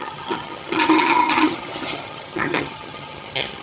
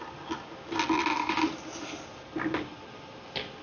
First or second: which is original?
second